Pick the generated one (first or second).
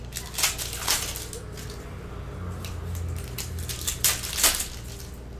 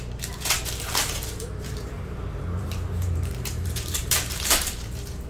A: second